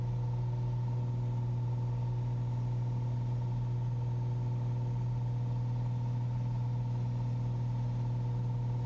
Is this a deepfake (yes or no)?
no